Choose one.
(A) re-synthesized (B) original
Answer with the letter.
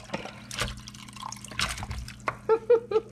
B